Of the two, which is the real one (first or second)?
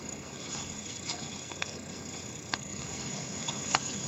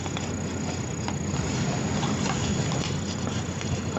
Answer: second